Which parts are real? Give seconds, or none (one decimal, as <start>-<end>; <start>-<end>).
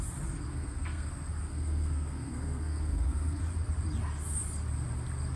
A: 0.0-0.5; 1.1-1.5; 3.4-5.4